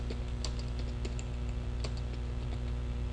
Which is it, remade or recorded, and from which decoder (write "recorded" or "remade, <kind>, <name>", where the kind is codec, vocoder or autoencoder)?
recorded